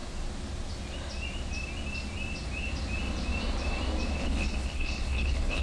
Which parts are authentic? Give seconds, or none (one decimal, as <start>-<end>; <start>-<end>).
0.0-4.2

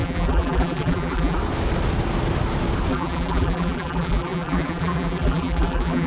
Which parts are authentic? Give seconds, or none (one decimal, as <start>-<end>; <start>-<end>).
1.4-2.9